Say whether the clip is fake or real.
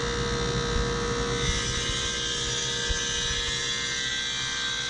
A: real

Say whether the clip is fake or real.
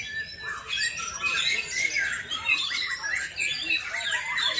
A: real